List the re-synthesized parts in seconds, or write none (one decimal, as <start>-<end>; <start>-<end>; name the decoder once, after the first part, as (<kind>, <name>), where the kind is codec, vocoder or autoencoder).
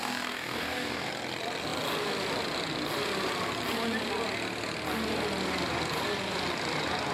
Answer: 0.0-1.1 (codec, DAC)